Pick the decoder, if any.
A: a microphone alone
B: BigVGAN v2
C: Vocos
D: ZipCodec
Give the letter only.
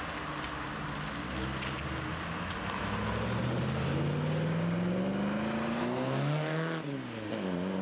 A